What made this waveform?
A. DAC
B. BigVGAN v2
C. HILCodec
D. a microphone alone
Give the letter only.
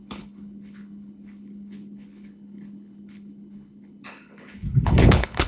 C